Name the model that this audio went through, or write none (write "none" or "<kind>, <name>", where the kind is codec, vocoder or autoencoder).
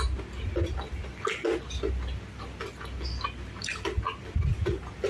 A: none